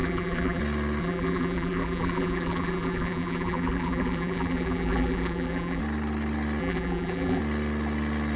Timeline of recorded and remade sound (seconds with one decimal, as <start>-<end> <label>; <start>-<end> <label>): 0.0-0.6 remade; 0.6-1.0 recorded; 1.0-5.8 remade; 5.8-6.6 recorded; 6.6-7.4 remade; 7.4-8.4 recorded